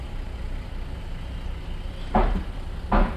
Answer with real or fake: real